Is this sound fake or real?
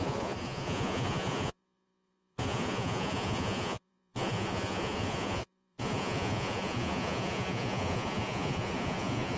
fake